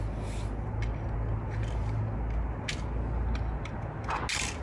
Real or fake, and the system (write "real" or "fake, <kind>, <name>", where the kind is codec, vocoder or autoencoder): real